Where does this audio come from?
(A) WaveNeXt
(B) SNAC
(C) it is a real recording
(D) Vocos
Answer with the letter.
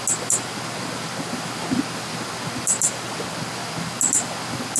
C